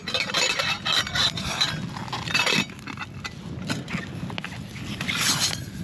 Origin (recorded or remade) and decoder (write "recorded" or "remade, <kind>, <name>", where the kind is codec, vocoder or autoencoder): recorded